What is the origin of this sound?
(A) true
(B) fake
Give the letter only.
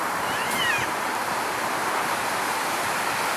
B